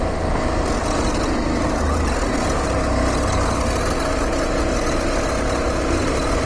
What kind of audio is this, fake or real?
real